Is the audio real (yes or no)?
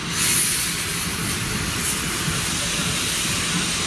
yes